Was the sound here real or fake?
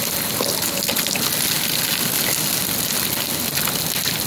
real